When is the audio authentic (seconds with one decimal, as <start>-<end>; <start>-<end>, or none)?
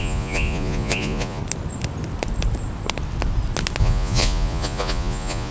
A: 1.4-3.8